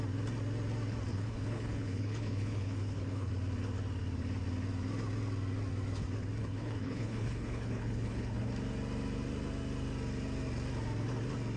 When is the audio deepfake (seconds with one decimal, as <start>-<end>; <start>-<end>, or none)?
1.1-3.3; 6.4-8.5